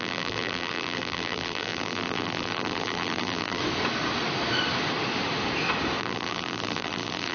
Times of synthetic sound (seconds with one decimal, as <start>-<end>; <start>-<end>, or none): 0.0-3.6; 6.0-7.3